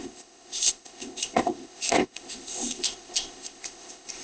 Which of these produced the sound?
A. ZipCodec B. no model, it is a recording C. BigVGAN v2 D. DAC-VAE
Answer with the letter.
A